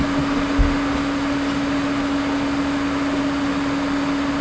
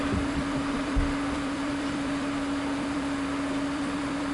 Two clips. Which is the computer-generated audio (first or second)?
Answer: second